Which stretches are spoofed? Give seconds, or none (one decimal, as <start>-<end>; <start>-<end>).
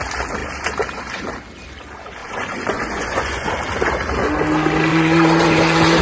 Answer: 2.2-3.5; 4.9-6.0